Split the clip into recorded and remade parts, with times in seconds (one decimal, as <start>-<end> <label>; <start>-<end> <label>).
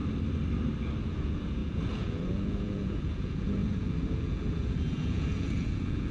0.0-1.0 recorded; 1.0-6.1 remade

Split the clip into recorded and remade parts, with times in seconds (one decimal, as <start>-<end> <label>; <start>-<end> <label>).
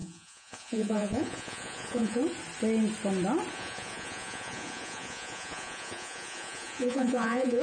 0.0-2.2 remade; 2.2-3.5 recorded; 3.5-7.6 remade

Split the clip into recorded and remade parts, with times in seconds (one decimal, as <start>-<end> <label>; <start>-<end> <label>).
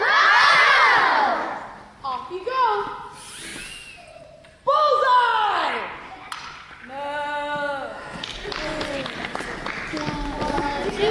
0.0-11.1 recorded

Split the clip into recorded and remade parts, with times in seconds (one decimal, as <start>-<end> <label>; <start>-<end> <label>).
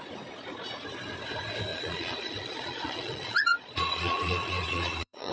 0.0-1.7 recorded; 1.7-5.3 remade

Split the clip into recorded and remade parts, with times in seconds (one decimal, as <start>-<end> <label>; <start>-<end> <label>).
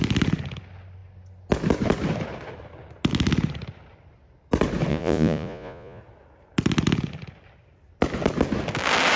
0.0-4.9 recorded; 4.9-6.0 remade; 6.0-9.2 recorded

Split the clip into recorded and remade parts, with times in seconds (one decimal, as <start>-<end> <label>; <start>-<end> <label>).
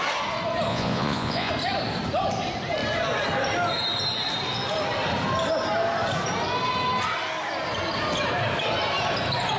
0.0-0.7 recorded; 0.7-1.5 remade; 1.5-9.6 recorded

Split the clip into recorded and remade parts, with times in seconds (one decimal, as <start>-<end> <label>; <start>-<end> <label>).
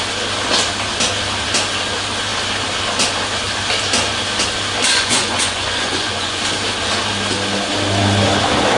0.0-4.9 recorded; 4.9-6.4 remade; 6.4-8.8 recorded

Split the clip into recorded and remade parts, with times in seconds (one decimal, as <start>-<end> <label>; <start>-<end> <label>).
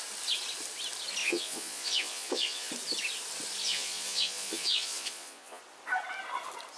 0.0-1.2 recorded; 1.2-2.7 remade; 2.7-3.6 recorded; 3.6-5.6 remade; 5.6-6.8 recorded